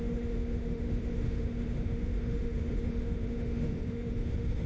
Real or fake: fake